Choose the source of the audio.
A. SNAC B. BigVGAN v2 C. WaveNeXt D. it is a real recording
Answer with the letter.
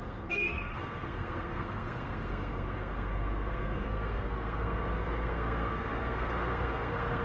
A